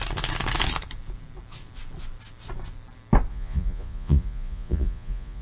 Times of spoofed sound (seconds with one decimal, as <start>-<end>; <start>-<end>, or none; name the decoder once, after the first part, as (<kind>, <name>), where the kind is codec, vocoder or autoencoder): 3.3-5.4 (vocoder, Vocos)